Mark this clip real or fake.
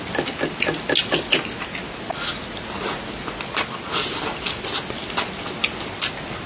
real